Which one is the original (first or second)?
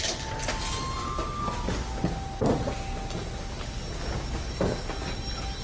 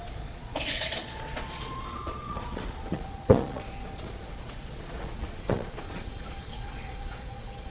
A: first